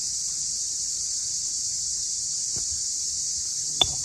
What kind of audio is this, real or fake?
fake